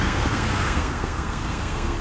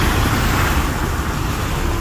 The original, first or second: second